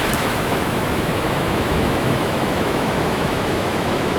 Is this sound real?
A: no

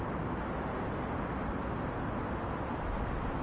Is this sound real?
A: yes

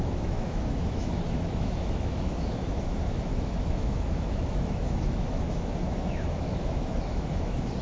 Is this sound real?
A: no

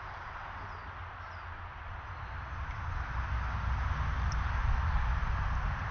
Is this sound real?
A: yes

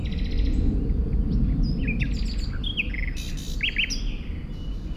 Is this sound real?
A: yes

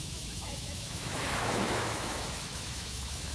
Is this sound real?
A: no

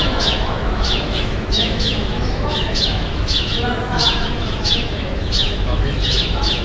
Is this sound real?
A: no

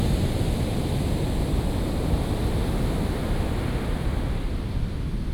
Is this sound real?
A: yes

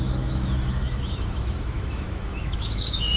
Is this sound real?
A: no